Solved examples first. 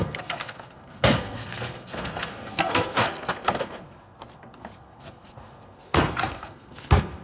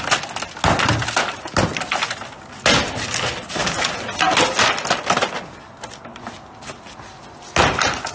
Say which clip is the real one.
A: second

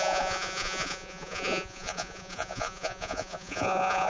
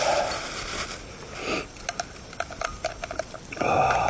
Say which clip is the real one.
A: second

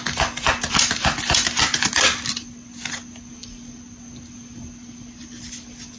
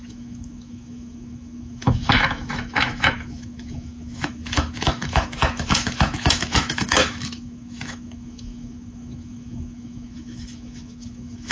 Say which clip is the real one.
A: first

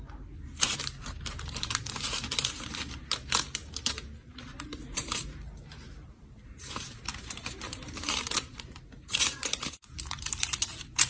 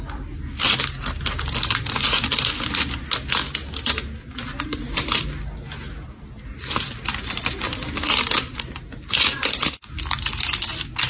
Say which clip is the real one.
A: second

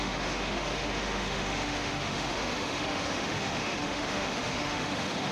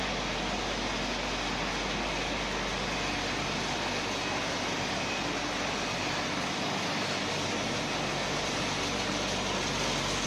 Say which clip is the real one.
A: second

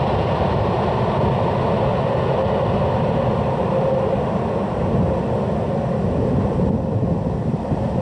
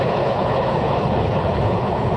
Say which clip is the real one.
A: first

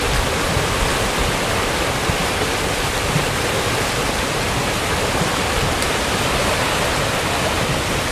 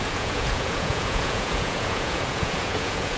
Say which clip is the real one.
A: first